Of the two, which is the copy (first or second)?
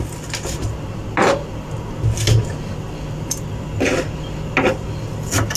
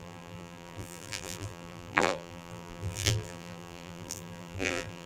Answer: second